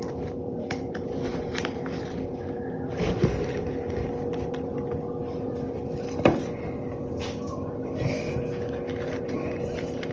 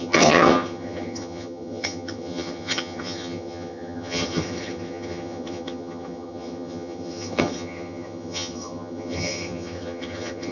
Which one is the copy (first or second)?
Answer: second